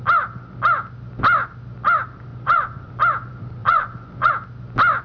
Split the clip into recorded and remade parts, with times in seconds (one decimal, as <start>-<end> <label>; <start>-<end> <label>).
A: 0.0-2.3 recorded; 2.3-2.9 remade; 2.9-3.6 recorded; 3.6-4.3 remade; 4.3-5.0 recorded